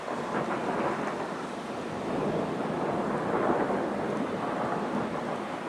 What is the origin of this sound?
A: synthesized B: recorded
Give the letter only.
A